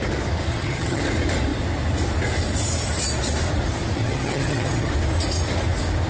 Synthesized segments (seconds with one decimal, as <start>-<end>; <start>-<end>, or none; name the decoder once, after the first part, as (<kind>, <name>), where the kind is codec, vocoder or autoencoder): 0.5-1.0 (vocoder, HiFi-GAN); 4.0-4.9